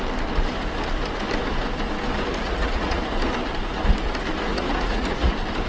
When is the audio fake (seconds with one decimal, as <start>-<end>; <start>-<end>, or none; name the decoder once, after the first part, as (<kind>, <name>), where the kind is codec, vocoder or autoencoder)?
2.3-3.0 (vocoder, Vocos); 4.5-5.3